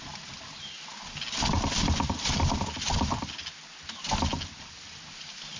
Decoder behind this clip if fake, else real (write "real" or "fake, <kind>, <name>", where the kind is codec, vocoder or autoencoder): real